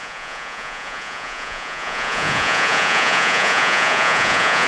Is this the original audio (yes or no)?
no